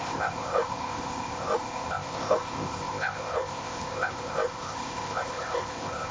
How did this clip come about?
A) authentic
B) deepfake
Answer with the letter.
B